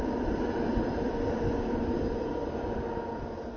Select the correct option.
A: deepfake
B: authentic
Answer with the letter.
B